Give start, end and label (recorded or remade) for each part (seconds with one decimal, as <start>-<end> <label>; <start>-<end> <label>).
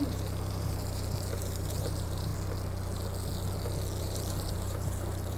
0.0-2.3 remade; 2.3-4.0 recorded; 4.0-5.4 remade